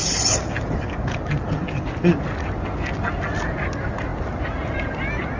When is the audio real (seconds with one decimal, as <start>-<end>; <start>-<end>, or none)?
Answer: 0.0-5.4